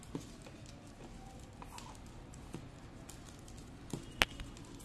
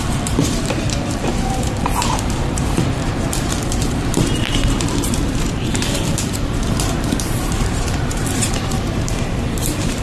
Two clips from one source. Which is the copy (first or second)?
second